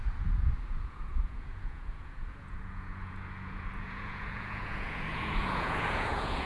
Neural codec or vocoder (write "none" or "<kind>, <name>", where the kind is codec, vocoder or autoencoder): vocoder, Vocos